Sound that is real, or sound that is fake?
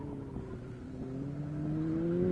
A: real